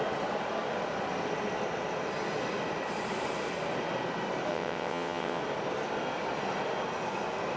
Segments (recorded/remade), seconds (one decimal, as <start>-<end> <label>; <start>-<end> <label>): 0.0-4.5 recorded; 4.5-5.4 remade; 5.4-7.6 recorded

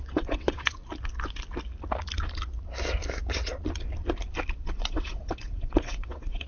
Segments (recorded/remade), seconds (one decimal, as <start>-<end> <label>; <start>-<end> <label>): 0.0-0.8 remade; 0.8-4.7 recorded; 4.7-6.5 remade

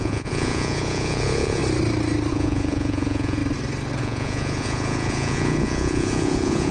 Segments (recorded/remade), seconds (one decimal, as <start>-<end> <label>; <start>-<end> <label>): 0.0-1.6 remade; 1.6-2.3 recorded; 2.3-3.4 remade; 3.4-4.0 recorded; 4.0-6.7 remade

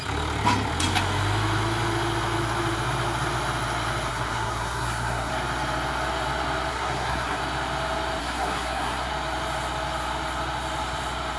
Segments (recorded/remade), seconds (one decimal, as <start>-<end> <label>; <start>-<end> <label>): 0.0-4.1 recorded; 4.1-5.3 remade; 5.3-6.7 recorded; 6.7-7.4 remade; 7.4-8.2 recorded; 8.2-9.1 remade; 9.1-11.4 recorded

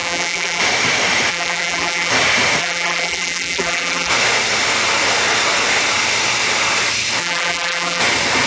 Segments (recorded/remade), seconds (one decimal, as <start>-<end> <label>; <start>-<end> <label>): 0.0-0.6 remade; 0.6-1.3 recorded; 1.3-2.1 remade; 2.1-2.6 recorded; 2.6-4.1 remade; 4.1-7.2 recorded; 7.2-8.0 remade; 8.0-8.5 recorded

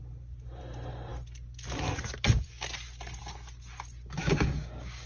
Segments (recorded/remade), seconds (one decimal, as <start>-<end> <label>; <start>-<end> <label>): 0.0-4.2 recorded; 4.2-5.1 remade

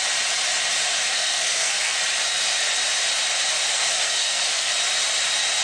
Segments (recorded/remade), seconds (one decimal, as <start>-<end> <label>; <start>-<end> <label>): 0.0-1.1 recorded; 1.1-2.0 remade; 2.0-3.7 recorded; 3.7-4.7 remade; 4.7-5.6 recorded